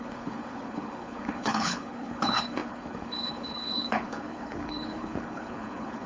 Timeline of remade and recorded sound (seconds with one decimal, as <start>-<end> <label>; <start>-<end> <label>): 0.0-6.1 remade